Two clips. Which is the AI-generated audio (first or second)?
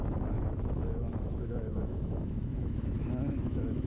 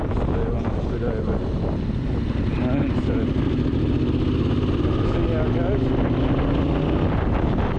first